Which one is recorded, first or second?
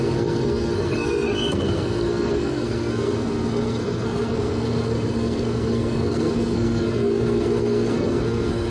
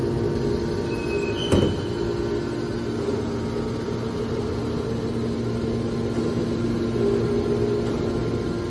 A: second